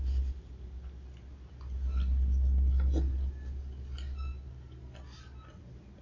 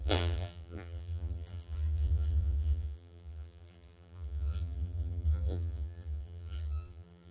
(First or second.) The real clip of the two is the first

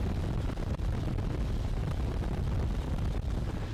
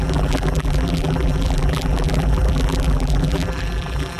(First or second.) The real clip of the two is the first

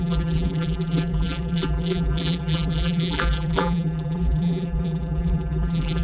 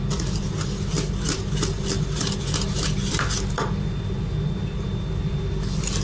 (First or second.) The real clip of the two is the second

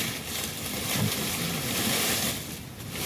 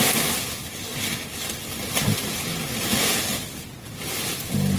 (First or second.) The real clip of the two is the second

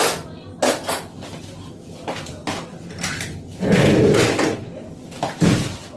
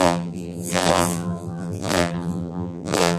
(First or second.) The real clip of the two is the first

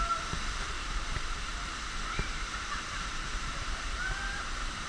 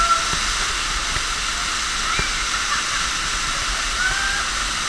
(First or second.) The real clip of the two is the second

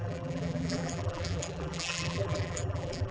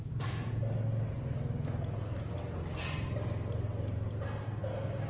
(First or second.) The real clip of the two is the second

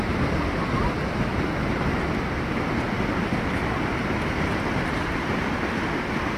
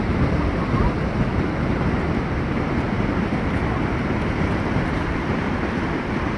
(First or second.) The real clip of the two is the first